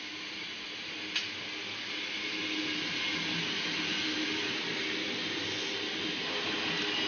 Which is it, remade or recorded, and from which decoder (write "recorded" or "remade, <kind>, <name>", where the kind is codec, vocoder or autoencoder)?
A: recorded